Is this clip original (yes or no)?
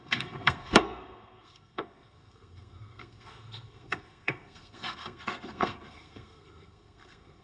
no